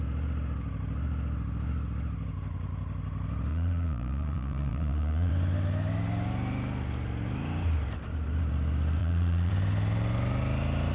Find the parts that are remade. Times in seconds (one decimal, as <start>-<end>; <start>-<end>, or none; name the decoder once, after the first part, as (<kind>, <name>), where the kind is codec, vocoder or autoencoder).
3.5-5.3 (vocoder, Vocos); 9.0-9.5